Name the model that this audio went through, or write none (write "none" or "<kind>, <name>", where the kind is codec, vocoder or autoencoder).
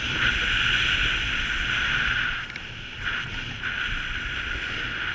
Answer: none